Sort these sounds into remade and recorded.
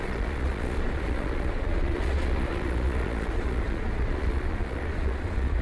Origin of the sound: remade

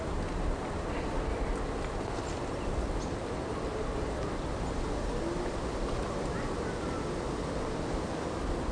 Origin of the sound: recorded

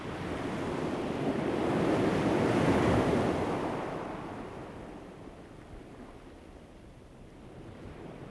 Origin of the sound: recorded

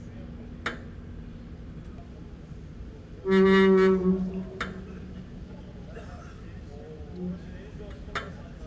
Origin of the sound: recorded